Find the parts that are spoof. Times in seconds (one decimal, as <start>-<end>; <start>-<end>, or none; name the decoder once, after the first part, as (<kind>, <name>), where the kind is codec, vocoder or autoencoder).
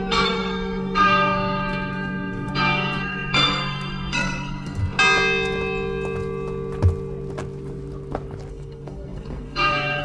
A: 0.0-4.8 (codec, SNAC); 8.5-10.0